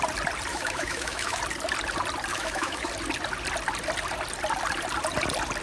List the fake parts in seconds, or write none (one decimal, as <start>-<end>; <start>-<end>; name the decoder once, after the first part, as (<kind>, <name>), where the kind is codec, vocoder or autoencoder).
0.5-1.4 (autoencoder, DAC-VAE); 2.3-2.9